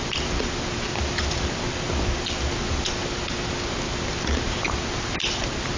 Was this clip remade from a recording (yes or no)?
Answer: no